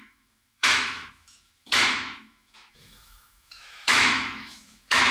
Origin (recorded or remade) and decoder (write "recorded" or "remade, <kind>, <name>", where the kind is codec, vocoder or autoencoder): remade, autoencoder, DAC-VAE